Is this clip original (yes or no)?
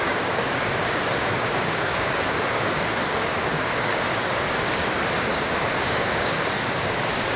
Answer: no